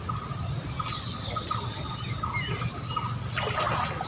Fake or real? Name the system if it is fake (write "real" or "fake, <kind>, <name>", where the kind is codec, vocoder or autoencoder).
real